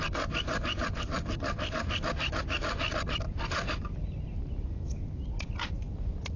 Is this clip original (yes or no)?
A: yes